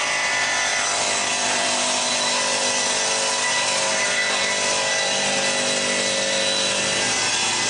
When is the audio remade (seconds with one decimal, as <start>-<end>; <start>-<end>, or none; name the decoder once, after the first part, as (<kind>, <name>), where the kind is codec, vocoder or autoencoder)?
none